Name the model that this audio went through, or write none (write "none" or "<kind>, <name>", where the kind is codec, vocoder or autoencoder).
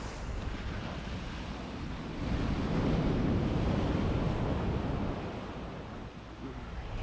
none